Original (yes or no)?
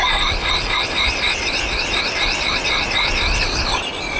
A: yes